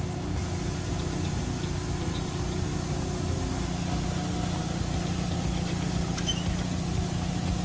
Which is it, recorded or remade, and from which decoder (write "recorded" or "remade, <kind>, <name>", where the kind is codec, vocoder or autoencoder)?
recorded